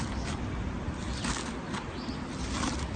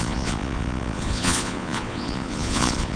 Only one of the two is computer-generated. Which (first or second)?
second